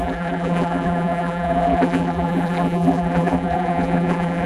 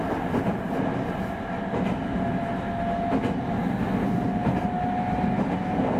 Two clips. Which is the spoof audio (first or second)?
first